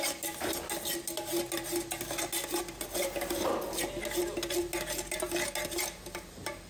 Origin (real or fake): real